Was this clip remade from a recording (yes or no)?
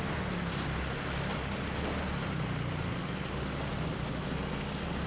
no